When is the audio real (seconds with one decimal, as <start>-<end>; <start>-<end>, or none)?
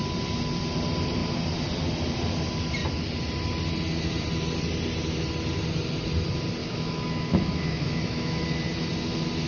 0.0-6.6; 8.4-9.5